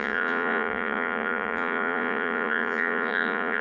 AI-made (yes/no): yes